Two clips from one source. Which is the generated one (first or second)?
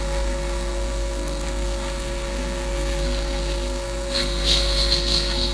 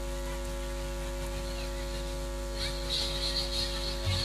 first